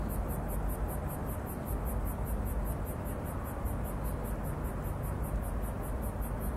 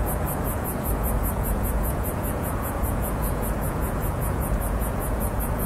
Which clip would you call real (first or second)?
first